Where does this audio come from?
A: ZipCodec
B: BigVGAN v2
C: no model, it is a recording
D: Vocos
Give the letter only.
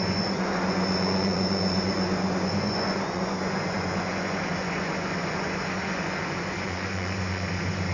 D